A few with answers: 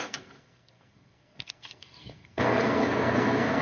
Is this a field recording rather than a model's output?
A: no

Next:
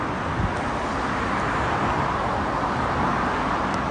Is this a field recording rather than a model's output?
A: yes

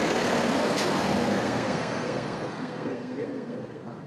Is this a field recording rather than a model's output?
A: no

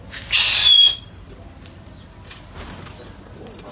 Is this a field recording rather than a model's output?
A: yes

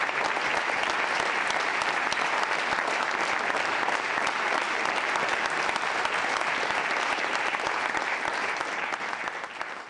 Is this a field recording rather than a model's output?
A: yes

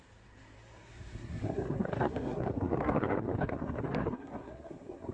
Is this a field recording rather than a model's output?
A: no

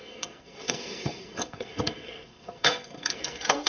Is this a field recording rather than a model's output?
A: no